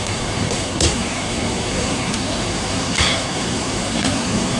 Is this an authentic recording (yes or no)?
no